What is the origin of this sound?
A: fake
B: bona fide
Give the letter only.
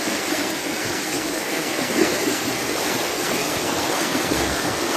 A